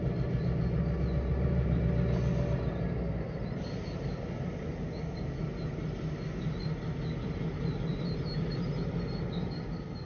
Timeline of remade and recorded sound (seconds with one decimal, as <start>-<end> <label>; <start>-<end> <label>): 0.0-1.3 recorded; 1.3-1.8 remade; 1.8-7.9 recorded; 7.9-8.7 remade; 8.7-10.1 recorded